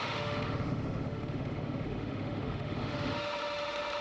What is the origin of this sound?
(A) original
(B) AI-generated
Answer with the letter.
B